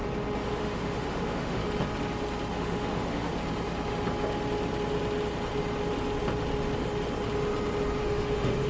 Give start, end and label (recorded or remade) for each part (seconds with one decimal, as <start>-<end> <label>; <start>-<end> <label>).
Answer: 0.0-0.5 recorded; 0.5-1.6 remade; 1.6-2.5 recorded; 2.5-3.3 remade; 3.3-8.0 recorded; 8.0-8.7 remade